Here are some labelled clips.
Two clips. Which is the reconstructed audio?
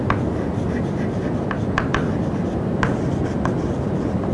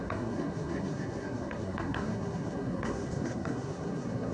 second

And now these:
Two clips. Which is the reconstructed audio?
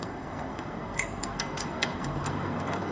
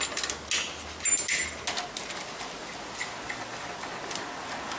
first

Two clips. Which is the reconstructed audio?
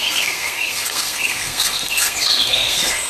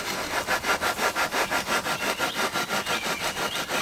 first